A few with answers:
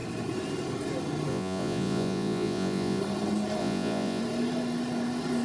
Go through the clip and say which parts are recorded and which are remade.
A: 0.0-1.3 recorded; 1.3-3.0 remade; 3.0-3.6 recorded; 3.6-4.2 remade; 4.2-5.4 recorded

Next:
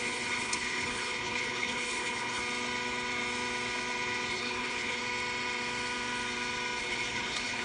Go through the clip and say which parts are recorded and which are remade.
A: 0.0-2.4 remade; 2.4-4.3 recorded; 4.3-5.0 remade; 5.0-6.8 recorded; 6.8-7.6 remade

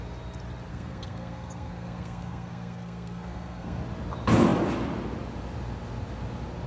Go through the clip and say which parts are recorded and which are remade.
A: 0.0-0.7 recorded; 0.7-3.8 remade; 3.8-6.7 recorded

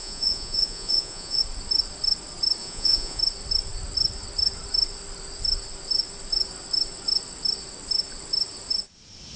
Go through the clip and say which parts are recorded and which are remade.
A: 0.0-1.4 remade; 1.4-2.6 recorded; 2.6-3.2 remade; 3.2-9.4 recorded